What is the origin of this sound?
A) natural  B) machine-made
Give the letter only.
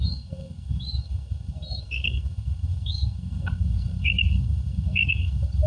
B